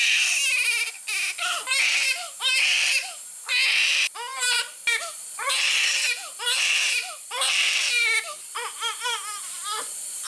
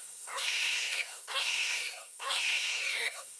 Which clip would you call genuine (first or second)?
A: first